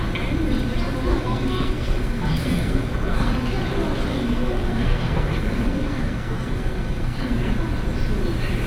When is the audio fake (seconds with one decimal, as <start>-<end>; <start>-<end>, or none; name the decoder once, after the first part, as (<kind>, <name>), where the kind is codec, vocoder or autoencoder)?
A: 1.1-3.3 (codec, SNAC); 4.1-7.5